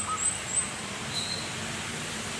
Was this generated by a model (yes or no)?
no